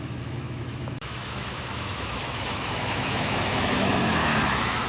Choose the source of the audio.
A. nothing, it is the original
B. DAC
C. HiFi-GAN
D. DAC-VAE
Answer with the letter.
D